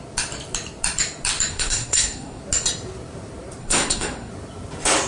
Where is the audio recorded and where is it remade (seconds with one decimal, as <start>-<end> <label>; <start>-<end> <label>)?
0.0-1.5 recorded; 1.5-2.4 remade; 2.4-3.6 recorded; 3.6-4.3 remade; 4.3-5.1 recorded